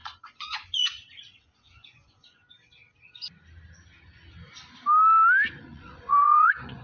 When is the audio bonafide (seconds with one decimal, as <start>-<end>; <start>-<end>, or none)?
2.5-5.6